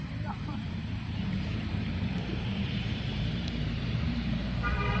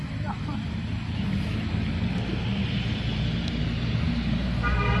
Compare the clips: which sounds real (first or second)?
second